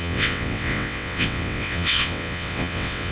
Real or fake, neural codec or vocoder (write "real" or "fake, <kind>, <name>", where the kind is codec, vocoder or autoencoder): fake, vocoder, WaveNeXt